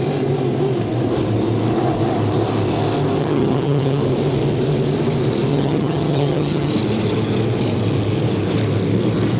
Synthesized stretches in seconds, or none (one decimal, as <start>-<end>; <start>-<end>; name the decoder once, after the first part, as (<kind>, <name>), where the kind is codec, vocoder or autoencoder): 3.2-4.0 (vocoder, HiFi-GAN); 5.5-6.7